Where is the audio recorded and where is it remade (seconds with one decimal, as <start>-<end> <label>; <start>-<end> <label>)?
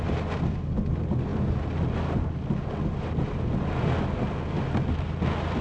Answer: 0.0-5.6 recorded